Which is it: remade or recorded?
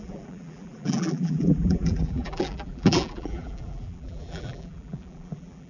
remade